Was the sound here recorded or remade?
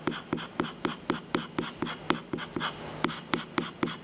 recorded